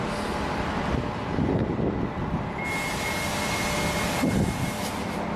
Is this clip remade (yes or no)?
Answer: no